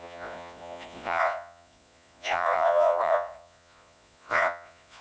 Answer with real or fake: fake